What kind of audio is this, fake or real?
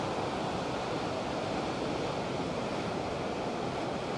real